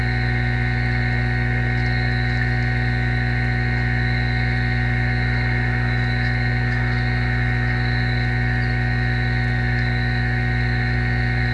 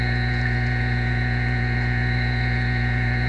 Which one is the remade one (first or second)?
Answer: second